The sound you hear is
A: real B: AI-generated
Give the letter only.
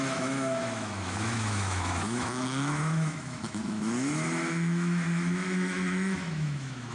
B